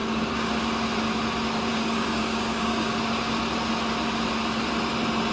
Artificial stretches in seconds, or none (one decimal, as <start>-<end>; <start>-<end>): 0.0-0.5; 1.7-2.9